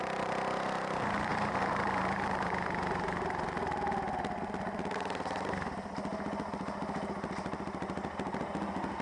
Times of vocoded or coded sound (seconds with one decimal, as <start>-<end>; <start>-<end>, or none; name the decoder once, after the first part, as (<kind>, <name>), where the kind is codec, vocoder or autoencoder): 1.3-3.5 (vocoder, BigVGAN v2)